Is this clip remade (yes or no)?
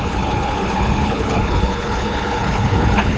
yes